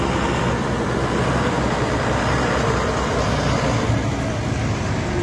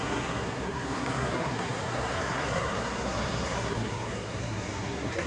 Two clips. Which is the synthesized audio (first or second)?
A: second